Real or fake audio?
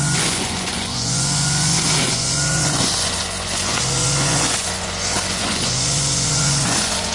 fake